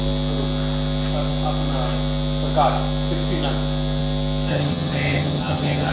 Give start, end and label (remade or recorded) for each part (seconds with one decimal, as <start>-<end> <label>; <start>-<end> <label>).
0.0-4.5 recorded; 4.5-5.9 remade